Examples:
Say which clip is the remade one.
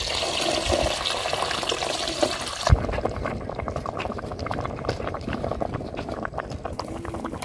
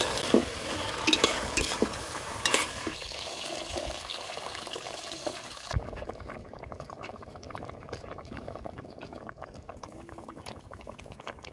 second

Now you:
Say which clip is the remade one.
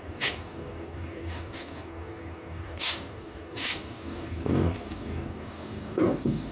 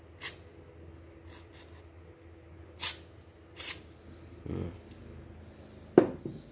first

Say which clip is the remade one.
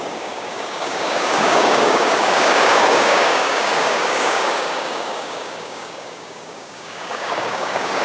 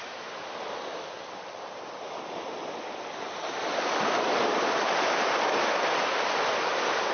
first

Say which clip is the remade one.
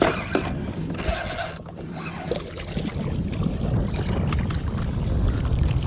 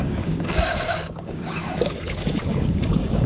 second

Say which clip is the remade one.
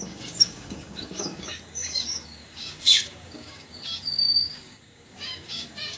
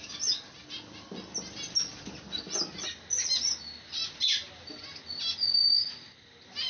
first